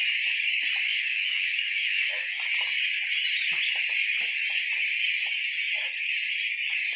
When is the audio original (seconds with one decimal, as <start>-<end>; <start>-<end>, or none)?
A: 0.0-0.9; 2.4-7.0